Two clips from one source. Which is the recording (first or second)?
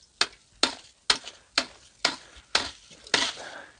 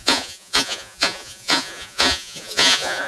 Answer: first